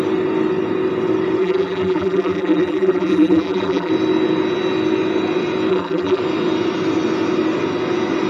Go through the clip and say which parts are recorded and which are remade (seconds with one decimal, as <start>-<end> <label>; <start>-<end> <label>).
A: 0.0-1.4 recorded; 1.4-3.9 remade; 3.9-5.7 recorded; 5.7-6.2 remade; 6.2-8.3 recorded